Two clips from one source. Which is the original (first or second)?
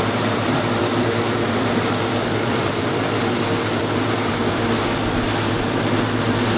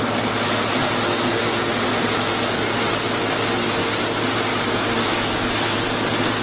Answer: second